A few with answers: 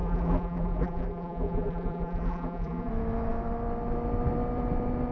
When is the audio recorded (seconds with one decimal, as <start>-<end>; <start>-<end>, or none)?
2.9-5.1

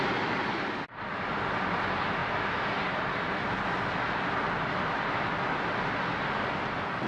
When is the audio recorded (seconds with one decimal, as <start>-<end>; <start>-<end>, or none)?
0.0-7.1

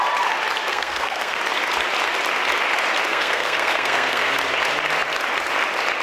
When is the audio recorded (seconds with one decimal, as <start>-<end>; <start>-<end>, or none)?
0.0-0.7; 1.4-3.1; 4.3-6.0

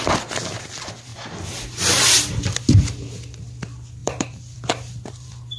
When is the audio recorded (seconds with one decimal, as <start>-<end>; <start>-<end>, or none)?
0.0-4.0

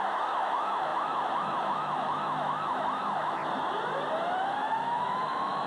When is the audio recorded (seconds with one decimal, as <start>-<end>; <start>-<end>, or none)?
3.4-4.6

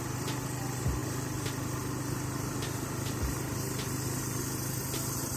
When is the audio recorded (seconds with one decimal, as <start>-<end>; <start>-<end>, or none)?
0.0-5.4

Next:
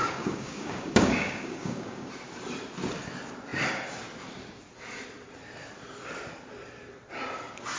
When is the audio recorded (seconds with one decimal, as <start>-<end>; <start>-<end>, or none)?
2.1-7.8

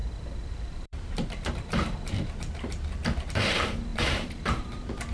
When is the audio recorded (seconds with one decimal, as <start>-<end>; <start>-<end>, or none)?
0.0-0.5